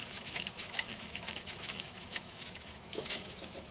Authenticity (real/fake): fake